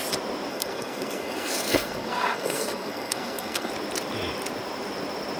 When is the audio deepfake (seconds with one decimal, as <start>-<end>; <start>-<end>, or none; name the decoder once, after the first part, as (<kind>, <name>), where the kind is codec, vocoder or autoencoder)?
0.5-3.7 (codec, SNAC)